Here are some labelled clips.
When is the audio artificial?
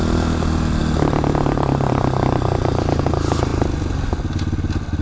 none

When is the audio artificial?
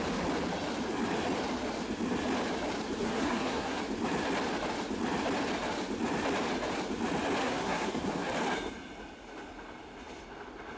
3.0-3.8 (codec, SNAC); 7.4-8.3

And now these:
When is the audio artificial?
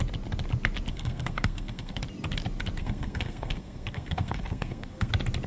0.9-2.0 (codec, SNAC); 2.8-5.1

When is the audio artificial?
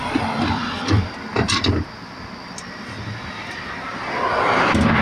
none